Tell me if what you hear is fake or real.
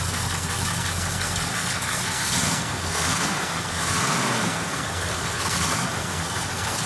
fake